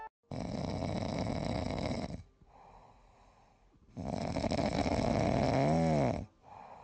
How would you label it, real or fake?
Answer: real